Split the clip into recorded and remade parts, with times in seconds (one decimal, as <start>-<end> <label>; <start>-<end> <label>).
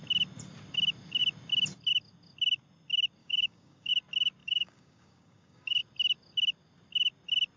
0.0-3.2 recorded; 3.2-3.9 remade; 3.9-4.4 recorded; 4.4-5.8 remade; 5.8-7.6 recorded